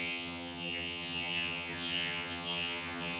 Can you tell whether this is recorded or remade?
remade